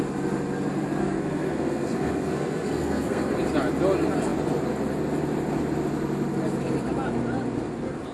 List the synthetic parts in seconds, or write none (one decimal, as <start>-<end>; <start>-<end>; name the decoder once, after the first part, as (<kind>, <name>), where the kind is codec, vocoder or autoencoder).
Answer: 1.0-3.3 (codec, SNAC)